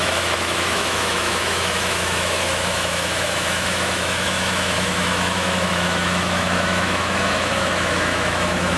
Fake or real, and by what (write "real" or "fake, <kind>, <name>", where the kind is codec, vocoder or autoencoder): fake, autoencoder, DAC-VAE